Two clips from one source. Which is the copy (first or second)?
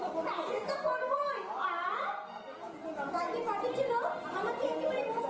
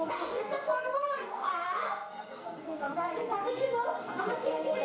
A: second